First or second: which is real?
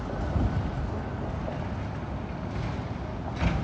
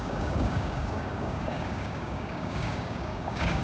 first